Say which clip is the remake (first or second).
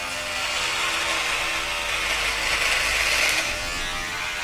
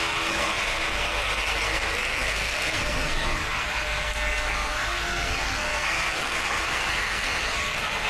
second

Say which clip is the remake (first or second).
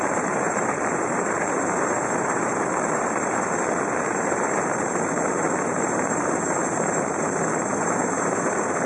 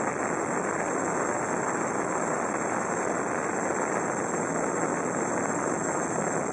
first